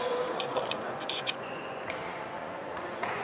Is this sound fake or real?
fake